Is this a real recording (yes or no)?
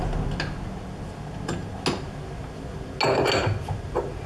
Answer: yes